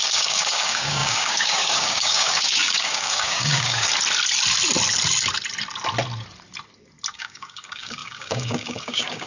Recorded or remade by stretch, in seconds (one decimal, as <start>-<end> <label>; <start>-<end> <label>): 0.0-3.9 remade; 3.9-7.1 recorded; 7.1-9.3 remade